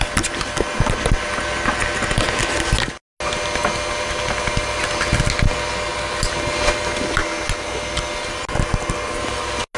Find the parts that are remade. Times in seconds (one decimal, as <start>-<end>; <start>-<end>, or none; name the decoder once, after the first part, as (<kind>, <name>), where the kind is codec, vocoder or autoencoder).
none